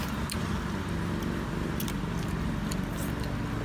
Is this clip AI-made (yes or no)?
no